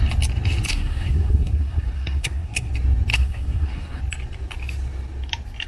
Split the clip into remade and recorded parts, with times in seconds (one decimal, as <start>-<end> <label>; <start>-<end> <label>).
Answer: 0.0-0.7 recorded; 0.7-2.7 remade; 2.7-3.1 recorded; 3.1-4.0 remade; 4.0-5.7 recorded